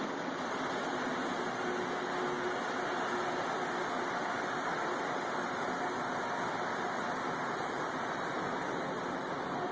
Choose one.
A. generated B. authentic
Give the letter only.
B